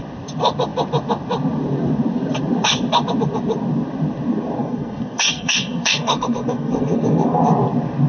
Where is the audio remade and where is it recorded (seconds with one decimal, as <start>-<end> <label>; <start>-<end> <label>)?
0.0-4.6 recorded; 4.6-7.4 remade; 7.4-8.1 recorded